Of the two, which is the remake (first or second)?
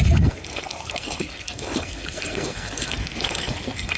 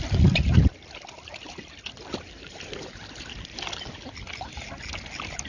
first